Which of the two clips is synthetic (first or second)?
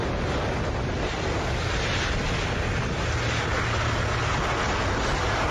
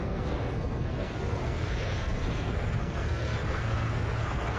second